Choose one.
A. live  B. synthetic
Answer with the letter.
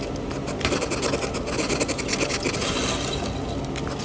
A